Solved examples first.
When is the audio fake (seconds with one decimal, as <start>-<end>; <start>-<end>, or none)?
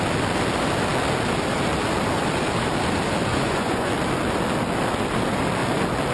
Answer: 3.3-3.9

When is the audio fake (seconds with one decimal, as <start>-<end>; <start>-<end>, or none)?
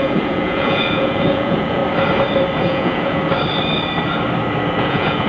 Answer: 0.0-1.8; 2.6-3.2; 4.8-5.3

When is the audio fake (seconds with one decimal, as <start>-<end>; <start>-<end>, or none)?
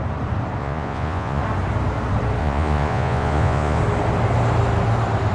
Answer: 0.6-1.4; 2.4-3.8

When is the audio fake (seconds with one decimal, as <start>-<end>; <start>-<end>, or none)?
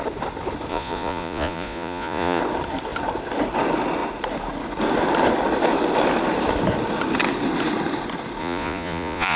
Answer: 0.7-2.4; 8.4-9.4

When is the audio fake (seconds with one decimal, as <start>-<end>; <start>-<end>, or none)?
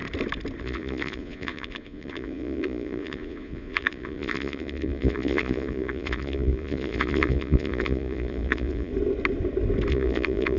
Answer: 0.6-8.9; 9.9-10.6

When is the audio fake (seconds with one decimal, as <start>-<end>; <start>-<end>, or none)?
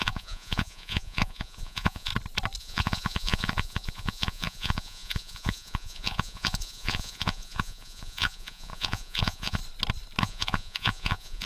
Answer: 0.0-2.1; 2.6-9.6; 10.2-11.5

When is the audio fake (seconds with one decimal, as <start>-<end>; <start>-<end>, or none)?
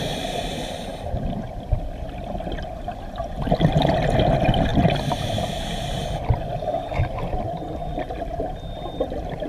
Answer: none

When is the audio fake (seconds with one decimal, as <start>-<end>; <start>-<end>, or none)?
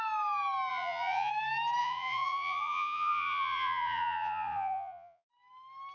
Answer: 0.7-1.3; 1.8-5.3